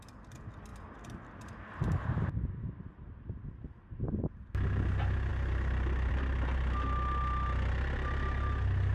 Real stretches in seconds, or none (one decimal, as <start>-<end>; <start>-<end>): 0.0-8.9

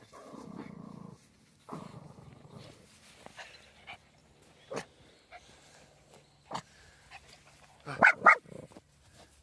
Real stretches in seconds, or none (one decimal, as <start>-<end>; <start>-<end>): 0.0-1.9; 2.5-9.4

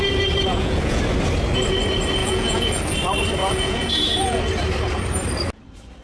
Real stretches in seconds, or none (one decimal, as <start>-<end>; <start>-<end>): 0.0-0.5; 1.0-2.2; 2.8-3.4; 4.4-6.0